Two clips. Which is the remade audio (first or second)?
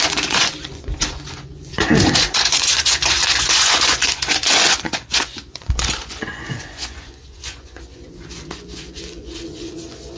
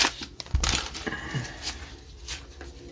first